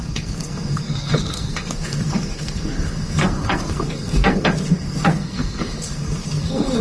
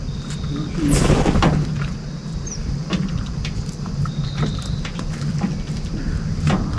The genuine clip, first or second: second